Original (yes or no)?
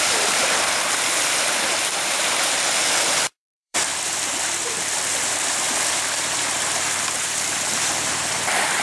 no